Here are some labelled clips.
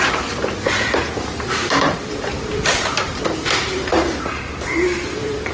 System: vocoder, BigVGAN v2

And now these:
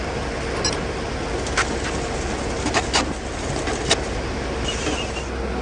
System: none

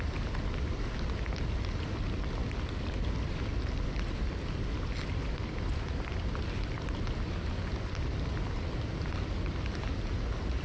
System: none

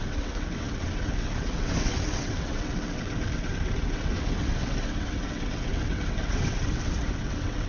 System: vocoder, WaveNeXt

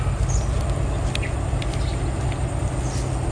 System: none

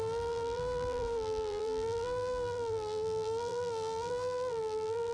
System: vocoder, BigVGAN v2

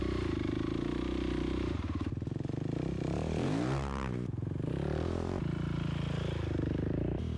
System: vocoder, BigVGAN v2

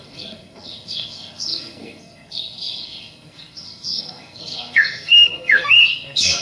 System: codec, SNAC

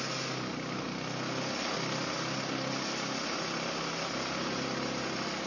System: none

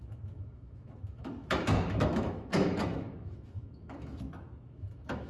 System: autoencoder, DAC-VAE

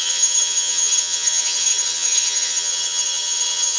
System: vocoder, HiFi-GAN